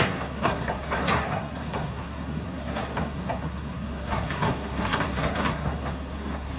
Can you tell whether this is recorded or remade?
remade